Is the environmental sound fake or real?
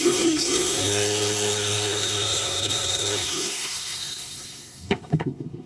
fake